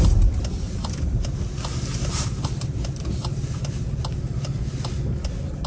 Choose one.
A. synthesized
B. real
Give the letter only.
B